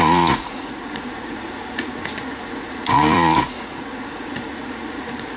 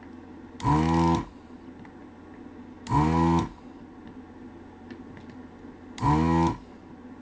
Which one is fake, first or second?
first